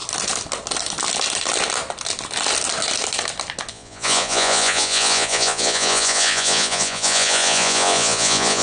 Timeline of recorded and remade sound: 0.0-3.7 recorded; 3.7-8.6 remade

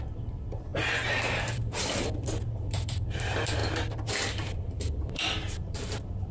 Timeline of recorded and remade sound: 0.0-0.7 remade; 0.7-1.4 recorded; 1.4-6.3 remade